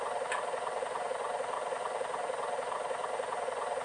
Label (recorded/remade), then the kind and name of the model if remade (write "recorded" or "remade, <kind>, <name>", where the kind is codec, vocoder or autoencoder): recorded